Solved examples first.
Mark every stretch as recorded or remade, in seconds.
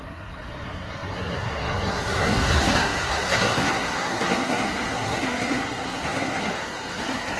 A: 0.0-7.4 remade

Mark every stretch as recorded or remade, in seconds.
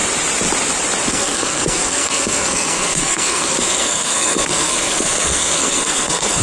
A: 0.0-1.1 recorded; 1.1-6.4 remade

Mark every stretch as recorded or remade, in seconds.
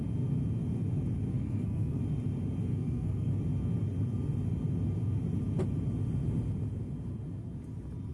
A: 0.0-1.3 recorded; 1.3-2.0 remade; 2.0-2.7 recorded; 2.7-3.4 remade; 3.4-8.1 recorded